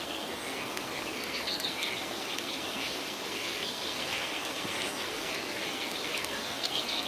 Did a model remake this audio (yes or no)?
yes